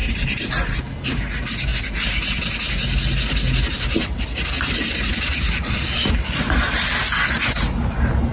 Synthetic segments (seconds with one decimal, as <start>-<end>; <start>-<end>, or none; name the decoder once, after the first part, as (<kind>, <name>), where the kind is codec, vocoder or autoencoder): 0.0-0.8 (vocoder, BigVGAN v2)